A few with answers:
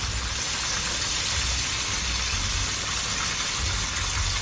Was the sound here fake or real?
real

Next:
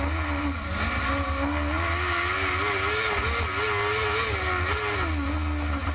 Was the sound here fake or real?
real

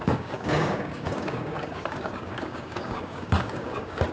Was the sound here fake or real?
fake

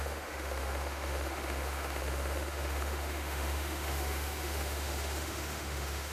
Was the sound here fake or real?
fake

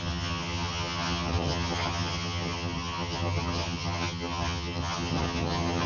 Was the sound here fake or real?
fake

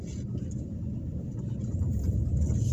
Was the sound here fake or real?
fake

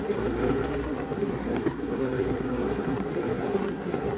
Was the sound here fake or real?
fake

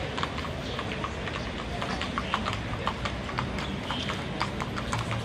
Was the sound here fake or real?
real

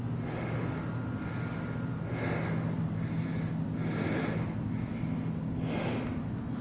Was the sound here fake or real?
real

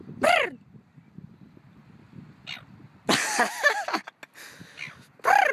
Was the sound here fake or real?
real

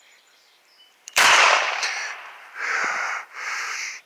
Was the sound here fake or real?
fake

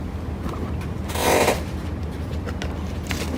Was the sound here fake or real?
real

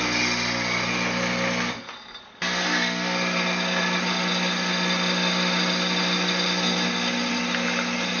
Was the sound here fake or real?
real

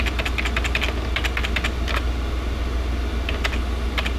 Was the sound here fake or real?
real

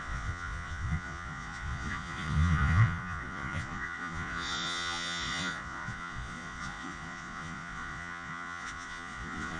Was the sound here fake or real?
fake